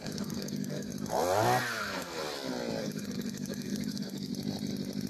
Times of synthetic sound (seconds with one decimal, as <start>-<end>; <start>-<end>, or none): 0.0-0.9; 1.8-2.2; 2.8-4.3